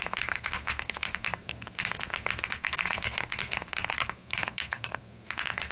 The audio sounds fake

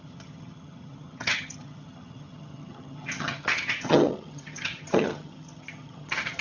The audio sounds fake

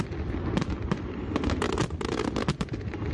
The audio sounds real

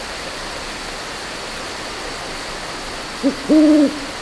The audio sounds real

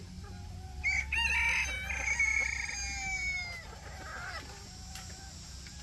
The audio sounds real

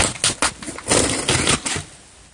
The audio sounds real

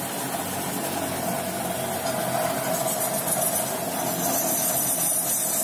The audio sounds real